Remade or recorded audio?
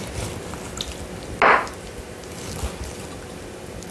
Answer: recorded